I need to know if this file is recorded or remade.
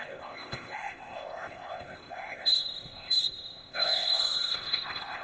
remade